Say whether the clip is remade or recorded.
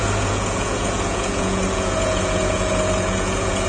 remade